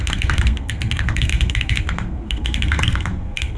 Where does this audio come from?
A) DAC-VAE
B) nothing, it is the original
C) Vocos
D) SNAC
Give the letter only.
D